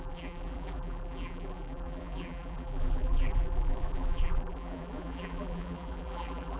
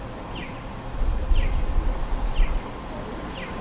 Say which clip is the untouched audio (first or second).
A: second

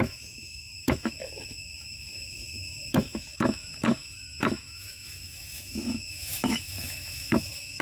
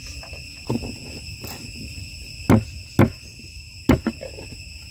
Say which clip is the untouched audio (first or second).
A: second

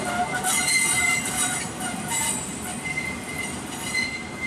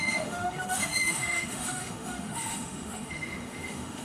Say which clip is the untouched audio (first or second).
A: first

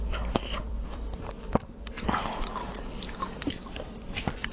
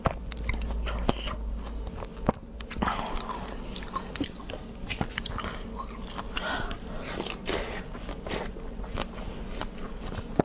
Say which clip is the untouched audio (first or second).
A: second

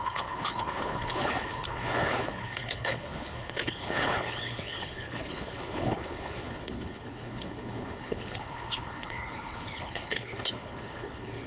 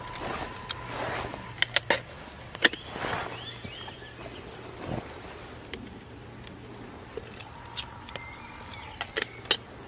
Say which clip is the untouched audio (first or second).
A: second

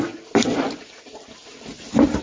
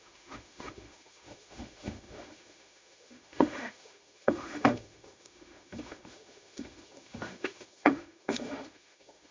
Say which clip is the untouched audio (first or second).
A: first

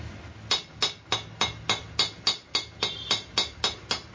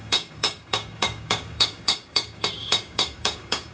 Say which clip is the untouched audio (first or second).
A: first